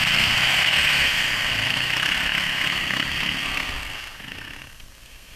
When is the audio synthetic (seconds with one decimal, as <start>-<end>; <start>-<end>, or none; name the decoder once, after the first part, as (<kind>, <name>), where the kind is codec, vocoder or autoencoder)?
0.0-5.4 (codec, SNAC)